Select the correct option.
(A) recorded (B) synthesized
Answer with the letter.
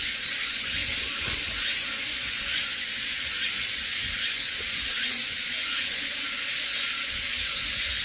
B